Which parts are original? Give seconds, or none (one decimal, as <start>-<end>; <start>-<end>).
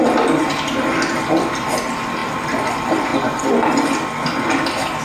0.0-5.0